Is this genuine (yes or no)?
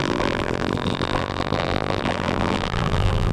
no